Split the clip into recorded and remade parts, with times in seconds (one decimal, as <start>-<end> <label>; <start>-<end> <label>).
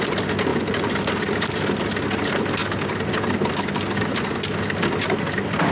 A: 0.0-0.5 recorded; 0.5-1.0 remade; 1.0-5.7 recorded